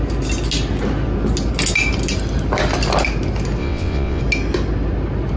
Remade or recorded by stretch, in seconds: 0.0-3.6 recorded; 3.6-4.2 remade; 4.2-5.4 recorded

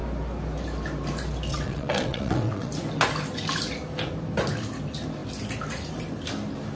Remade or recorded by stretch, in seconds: 0.0-1.5 recorded; 1.5-2.7 remade; 2.7-6.8 recorded

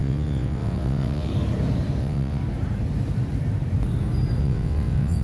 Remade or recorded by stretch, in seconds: 0.0-1.3 remade; 1.3-2.0 recorded; 2.0-2.4 remade; 2.4-4.4 recorded; 4.4-5.2 remade

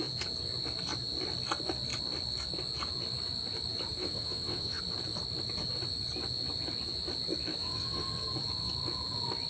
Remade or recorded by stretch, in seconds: 0.0-4.0 recorded; 4.0-4.8 remade; 4.8-7.6 recorded; 7.6-8.2 remade; 8.2-9.5 recorded

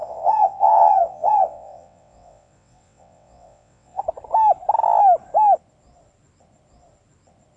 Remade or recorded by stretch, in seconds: 0.0-4.0 remade; 4.0-7.6 recorded

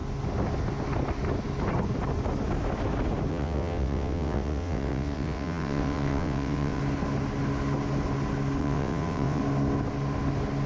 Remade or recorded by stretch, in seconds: 0.0-3.3 recorded; 3.3-6.8 remade; 6.8-8.6 recorded; 8.6-9.4 remade; 9.4-10.7 recorded

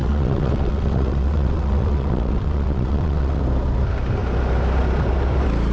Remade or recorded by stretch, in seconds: 0.0-3.4 remade; 3.4-5.7 recorded

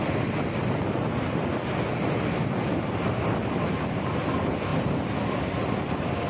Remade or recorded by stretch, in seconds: 0.0-6.3 recorded